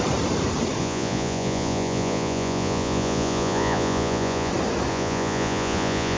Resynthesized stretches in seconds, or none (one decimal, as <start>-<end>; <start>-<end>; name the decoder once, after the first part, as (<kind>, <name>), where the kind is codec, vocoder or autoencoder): 0.8-4.5 (vocoder, Vocos); 4.9-6.2